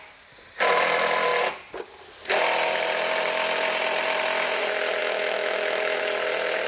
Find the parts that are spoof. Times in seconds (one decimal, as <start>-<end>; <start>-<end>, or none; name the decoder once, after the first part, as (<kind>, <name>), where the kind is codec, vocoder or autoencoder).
5.0-6.0 (autoencoder, DAC-VAE)